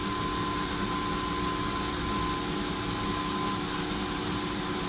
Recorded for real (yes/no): yes